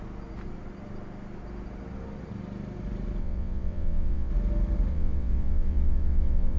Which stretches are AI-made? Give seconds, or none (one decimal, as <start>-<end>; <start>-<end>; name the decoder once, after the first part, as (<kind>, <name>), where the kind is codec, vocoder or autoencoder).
3.2-4.3 (vocoder, WaveNeXt); 4.9-6.6